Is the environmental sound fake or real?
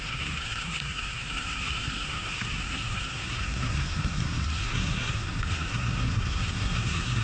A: fake